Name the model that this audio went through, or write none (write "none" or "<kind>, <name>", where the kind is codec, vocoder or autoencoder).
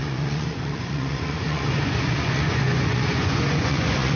vocoder, Vocos